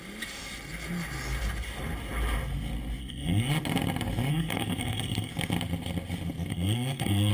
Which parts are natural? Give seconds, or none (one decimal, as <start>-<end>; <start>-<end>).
0.0-3.0; 3.5-4.3; 5.3-6.5